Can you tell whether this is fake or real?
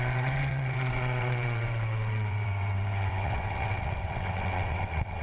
fake